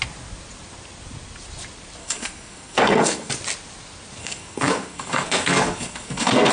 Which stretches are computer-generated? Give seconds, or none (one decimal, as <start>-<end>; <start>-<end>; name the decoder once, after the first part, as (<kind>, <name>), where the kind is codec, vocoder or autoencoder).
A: 2.0-3.3 (codec, SNAC); 4.2-6.5